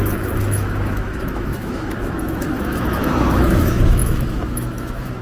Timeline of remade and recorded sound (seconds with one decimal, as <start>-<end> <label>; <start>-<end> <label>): 0.0-5.2 remade